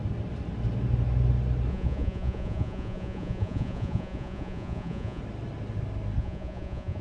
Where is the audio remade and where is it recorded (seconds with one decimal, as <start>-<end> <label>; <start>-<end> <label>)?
0.0-1.7 recorded; 1.7-5.2 remade; 5.2-6.2 recorded; 6.2-7.0 remade